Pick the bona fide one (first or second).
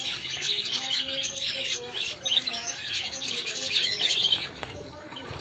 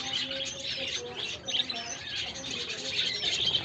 second